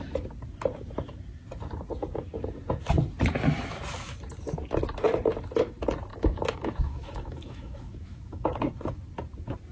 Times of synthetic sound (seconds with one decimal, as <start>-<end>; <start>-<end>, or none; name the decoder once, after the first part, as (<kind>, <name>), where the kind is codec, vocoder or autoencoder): 6.1-8.6 (autoencoder, DAC-VAE)